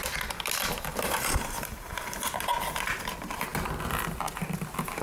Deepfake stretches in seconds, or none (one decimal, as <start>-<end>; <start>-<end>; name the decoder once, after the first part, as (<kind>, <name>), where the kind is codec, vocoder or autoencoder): 0.9-2.4 (vocoder, BigVGAN v2)